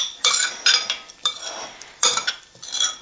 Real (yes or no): no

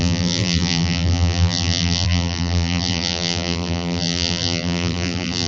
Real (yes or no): no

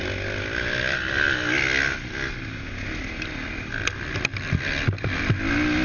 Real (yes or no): yes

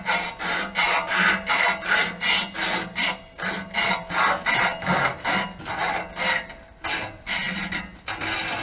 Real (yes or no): yes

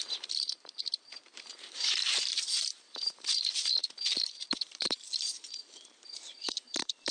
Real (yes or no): no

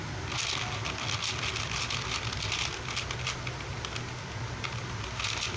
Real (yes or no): yes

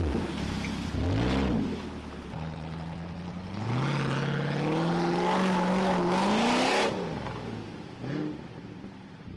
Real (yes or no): yes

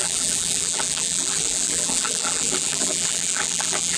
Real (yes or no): no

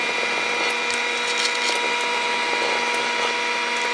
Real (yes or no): yes